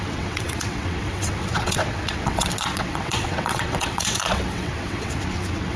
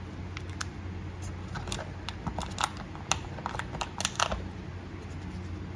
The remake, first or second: first